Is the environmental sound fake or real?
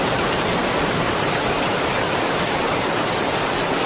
real